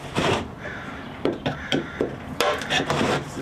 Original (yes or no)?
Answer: no